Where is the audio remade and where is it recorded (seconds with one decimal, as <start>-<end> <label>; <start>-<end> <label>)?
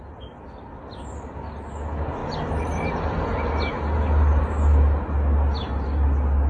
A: 0.0-6.5 recorded